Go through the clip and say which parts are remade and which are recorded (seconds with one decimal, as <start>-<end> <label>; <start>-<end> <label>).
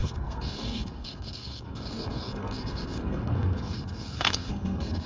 0.0-5.1 remade